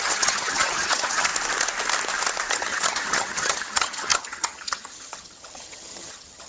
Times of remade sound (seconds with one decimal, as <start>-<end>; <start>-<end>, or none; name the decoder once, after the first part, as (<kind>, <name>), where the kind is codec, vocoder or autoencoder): 0.0-1.3 (vocoder, HiFi-GAN); 2.5-6.5